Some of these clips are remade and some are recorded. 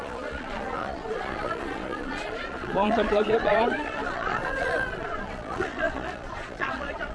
remade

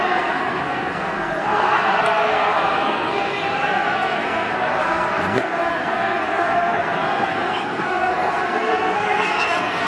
remade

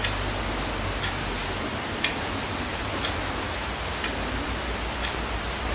recorded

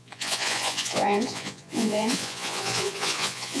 remade